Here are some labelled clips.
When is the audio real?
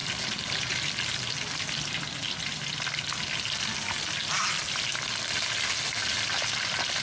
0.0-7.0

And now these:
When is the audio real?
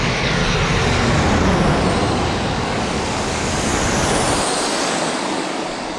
0.4-2.1; 3.7-4.9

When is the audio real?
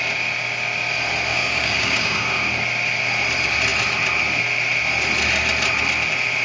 0.0-1.3; 2.3-6.4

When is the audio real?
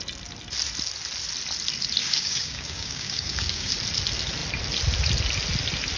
0.0-2.0; 3.7-6.0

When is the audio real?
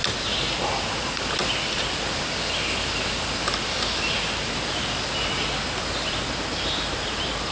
0.0-7.5